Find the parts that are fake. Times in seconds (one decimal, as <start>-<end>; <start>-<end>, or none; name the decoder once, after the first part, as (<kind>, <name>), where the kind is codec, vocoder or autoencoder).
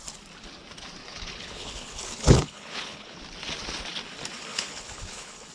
1.0-3.2 (codec, HILCodec); 4.5-5.5